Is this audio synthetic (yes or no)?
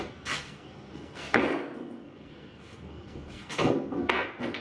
yes